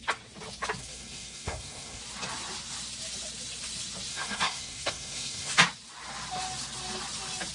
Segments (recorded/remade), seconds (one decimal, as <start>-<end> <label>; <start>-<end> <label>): 0.0-0.8 recorded; 0.8-2.0 remade; 2.0-4.1 recorded; 4.1-5.5 remade; 5.5-7.5 recorded